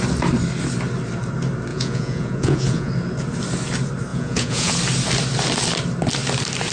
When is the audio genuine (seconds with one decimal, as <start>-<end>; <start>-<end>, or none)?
0.0-1.7; 2.9-4.1; 4.7-6.7